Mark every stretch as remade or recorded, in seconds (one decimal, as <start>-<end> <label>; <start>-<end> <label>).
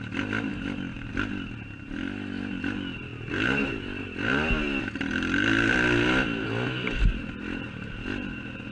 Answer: 0.0-8.7 recorded